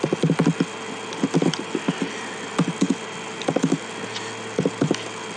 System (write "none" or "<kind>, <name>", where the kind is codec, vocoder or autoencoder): none